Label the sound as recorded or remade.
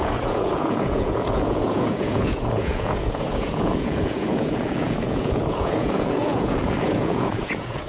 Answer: remade